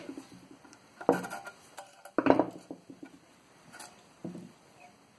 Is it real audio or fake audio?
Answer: real